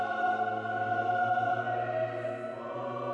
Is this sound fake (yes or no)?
no